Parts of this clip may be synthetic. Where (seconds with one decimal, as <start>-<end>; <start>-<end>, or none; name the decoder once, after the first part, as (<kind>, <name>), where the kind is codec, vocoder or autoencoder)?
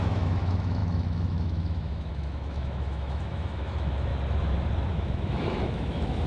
0.0-4.1 (autoencoder, DAC-VAE); 4.9-6.3